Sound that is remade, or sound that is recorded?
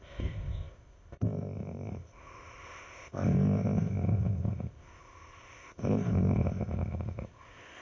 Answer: remade